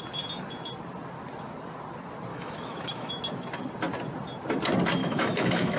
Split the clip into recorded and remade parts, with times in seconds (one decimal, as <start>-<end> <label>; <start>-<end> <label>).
0.0-2.3 recorded; 2.3-3.1 remade; 3.1-5.0 recorded; 5.0-5.8 remade